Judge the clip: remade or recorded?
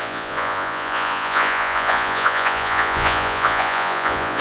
remade